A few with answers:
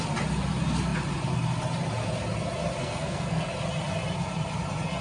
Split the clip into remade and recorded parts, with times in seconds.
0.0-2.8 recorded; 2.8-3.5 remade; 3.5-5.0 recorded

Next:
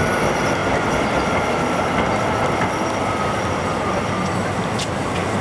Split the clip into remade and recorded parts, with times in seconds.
0.0-5.4 recorded

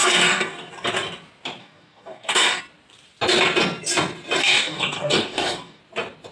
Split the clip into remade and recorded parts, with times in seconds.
0.0-0.7 remade; 0.7-1.6 recorded; 1.6-2.6 remade; 2.6-4.4 recorded; 4.4-5.8 remade; 5.8-6.3 recorded

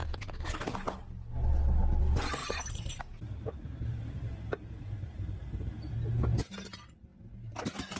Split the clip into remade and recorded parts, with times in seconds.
0.0-2.4 recorded; 2.4-5.7 remade; 5.7-8.0 recorded

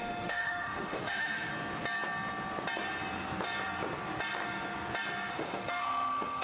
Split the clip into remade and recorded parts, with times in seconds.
0.0-1.5 remade; 1.5-5.3 recorded; 5.3-6.4 remade

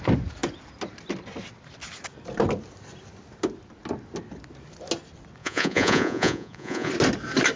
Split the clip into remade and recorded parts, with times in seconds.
0.0-5.4 recorded; 5.4-6.9 remade; 6.9-7.6 recorded